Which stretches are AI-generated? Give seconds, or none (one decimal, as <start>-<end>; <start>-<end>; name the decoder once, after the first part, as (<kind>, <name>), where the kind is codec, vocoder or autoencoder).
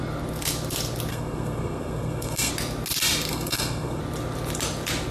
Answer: 1.1-2.5 (codec, SNAC); 3.3-4.0